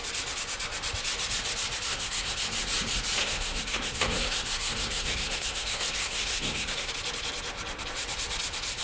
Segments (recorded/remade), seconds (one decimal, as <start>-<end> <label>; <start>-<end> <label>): 0.0-1.9 recorded; 1.9-2.4 remade; 2.4-3.2 recorded; 3.2-6.9 remade; 6.9-8.8 recorded